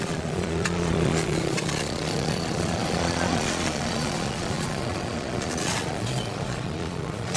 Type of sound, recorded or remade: remade